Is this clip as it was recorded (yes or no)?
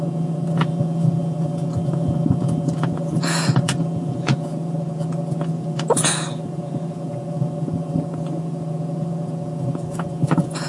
no